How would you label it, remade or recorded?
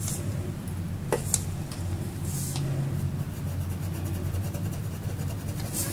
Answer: recorded